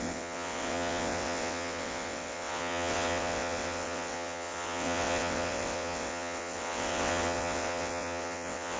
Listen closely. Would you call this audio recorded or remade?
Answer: remade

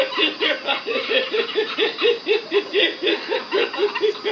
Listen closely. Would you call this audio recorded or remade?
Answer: remade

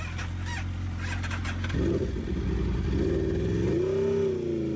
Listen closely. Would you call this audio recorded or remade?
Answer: recorded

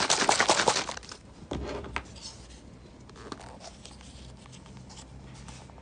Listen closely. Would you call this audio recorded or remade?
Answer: recorded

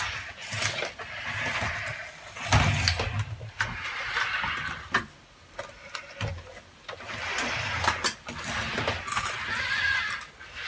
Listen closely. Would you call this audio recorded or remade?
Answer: recorded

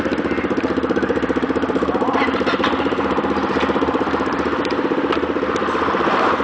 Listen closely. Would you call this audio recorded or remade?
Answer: remade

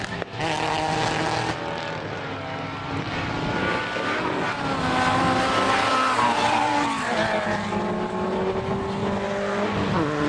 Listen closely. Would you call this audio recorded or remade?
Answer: recorded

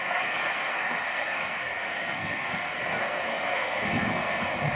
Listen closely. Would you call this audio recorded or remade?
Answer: remade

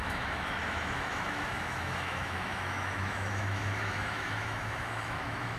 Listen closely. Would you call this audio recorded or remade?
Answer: remade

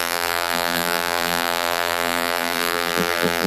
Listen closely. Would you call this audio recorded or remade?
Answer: remade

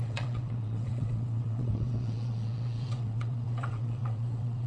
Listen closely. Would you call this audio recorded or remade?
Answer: remade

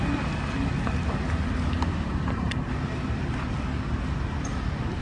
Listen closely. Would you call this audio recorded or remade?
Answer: recorded